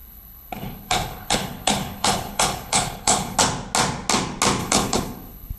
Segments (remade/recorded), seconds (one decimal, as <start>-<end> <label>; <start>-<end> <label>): 0.0-3.4 remade; 3.4-4.6 recorded; 4.6-5.6 remade